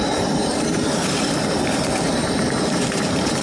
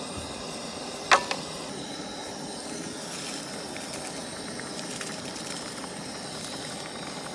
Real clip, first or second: second